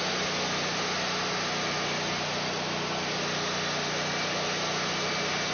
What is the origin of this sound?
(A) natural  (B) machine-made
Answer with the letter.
A